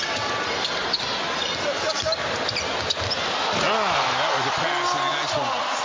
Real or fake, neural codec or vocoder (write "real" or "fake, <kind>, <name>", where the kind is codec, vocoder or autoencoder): real